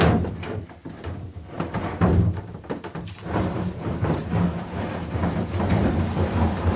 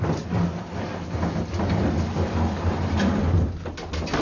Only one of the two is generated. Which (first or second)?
first